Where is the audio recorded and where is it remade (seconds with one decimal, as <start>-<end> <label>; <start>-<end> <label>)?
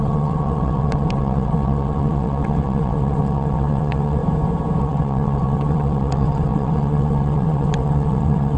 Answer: 0.0-4.2 remade; 4.2-4.8 recorded; 4.8-8.6 remade